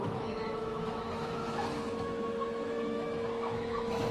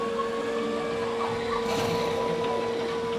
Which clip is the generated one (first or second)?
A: first